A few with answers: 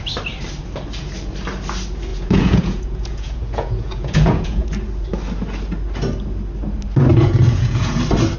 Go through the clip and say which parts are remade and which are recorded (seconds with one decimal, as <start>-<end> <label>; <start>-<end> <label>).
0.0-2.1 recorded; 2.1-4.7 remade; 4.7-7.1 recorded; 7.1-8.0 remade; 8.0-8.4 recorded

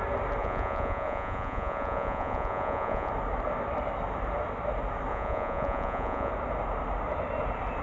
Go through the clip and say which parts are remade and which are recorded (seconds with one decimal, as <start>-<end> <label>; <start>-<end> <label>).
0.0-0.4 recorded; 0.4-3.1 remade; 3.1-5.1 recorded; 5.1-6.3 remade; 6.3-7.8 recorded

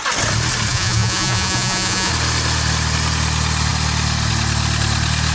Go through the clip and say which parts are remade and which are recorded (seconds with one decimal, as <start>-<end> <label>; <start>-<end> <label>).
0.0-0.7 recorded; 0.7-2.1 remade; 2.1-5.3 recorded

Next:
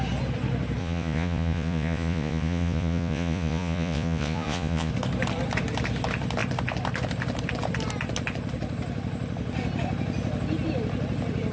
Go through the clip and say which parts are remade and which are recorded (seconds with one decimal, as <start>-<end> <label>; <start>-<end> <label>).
0.0-0.8 recorded; 0.8-4.9 remade; 4.9-11.5 recorded

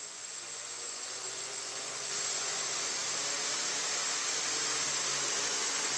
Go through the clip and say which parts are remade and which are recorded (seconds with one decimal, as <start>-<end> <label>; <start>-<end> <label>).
0.0-3.0 remade; 3.0-5.4 recorded; 5.4-6.0 remade

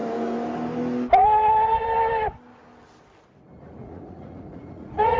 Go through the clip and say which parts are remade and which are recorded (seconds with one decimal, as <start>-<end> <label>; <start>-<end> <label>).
0.0-3.8 recorded; 3.8-5.2 remade

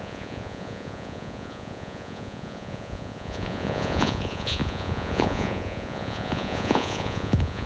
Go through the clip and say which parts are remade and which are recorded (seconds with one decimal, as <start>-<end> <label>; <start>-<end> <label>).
0.0-7.7 remade